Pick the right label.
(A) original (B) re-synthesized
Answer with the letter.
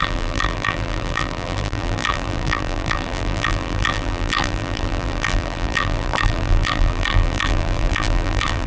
B